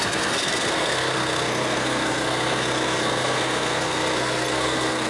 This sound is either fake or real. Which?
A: fake